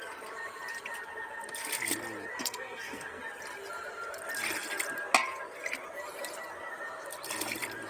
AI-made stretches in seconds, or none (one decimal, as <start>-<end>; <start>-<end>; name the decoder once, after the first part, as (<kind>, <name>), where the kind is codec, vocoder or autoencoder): 2.4-3.2 (codec, SNAC)